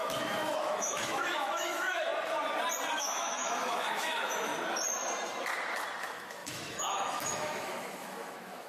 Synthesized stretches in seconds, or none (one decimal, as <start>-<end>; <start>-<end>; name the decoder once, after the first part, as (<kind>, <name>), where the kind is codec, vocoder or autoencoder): 0.0-2.1 (autoencoder, DAC-VAE); 2.9-4.5; 6.0-8.7